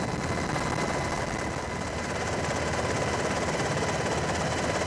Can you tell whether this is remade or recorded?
recorded